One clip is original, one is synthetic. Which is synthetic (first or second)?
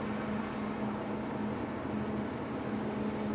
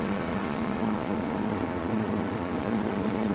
second